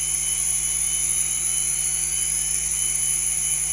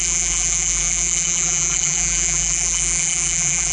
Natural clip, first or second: first